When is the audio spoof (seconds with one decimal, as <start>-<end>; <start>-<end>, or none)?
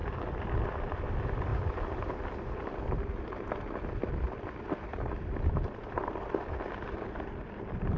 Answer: 0.0-1.0; 1.5-2.1; 4.9-6.1